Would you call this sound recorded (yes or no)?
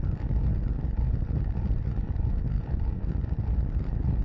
yes